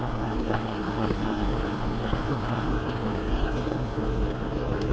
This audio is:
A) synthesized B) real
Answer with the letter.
A